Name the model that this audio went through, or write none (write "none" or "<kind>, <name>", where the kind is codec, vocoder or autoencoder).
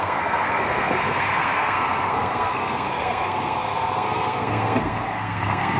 codec, SNAC